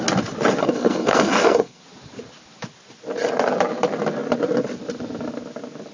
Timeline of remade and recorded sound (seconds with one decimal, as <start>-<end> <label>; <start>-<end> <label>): 0.0-0.6 recorded; 0.6-1.8 remade; 1.8-5.9 recorded